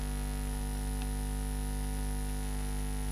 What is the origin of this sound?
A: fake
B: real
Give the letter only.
B